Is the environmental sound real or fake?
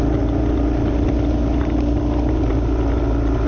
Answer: real